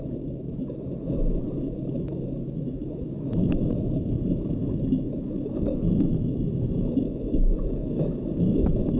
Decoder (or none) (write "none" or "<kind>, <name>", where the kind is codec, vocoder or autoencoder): autoencoder, DAC-VAE